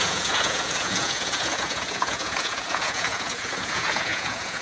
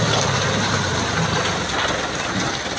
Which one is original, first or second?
second